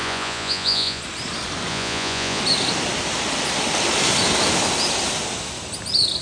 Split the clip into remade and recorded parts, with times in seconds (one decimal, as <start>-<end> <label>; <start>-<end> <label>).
0.0-1.0 remade; 1.0-1.7 recorded; 1.7-2.4 remade; 2.4-6.2 recorded

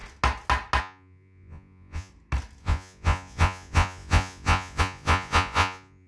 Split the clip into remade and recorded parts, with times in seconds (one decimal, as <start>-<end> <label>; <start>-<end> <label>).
0.0-0.8 recorded; 0.8-2.1 remade; 2.1-2.6 recorded; 2.6-6.1 remade

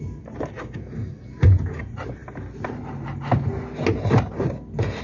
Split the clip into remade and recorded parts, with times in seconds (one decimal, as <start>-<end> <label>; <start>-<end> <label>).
0.0-1.0 recorded; 1.0-1.8 remade; 1.8-5.0 recorded

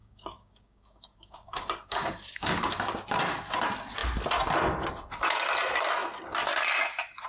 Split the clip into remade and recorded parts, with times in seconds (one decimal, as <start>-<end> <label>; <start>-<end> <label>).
0.0-3.2 remade; 3.2-7.3 recorded

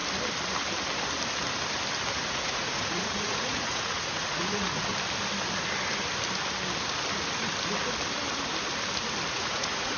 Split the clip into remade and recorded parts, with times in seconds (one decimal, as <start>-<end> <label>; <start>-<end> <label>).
0.0-2.3 recorded; 2.3-4.9 remade; 4.9-9.3 recorded; 9.3-10.0 remade

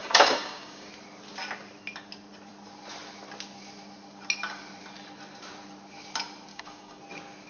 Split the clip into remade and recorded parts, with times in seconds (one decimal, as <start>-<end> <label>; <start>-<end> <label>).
0.0-0.9 remade; 0.9-6.5 recorded; 6.5-7.0 remade; 7.0-7.5 recorded

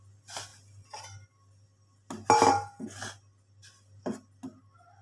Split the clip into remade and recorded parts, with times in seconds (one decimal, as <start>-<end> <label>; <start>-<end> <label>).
0.0-5.0 recorded